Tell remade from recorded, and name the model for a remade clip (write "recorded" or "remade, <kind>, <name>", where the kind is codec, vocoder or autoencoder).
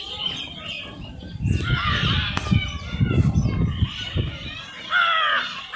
recorded